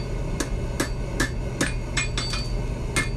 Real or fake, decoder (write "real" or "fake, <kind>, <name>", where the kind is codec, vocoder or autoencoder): real